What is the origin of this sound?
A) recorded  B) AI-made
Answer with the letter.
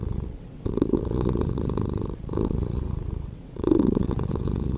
B